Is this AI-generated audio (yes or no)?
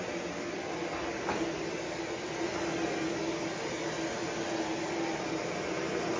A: no